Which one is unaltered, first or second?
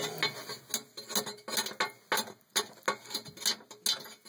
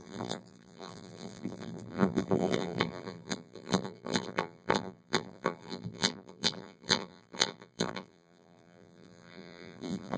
first